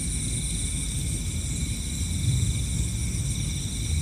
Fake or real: real